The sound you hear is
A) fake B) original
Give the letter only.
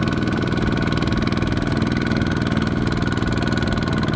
B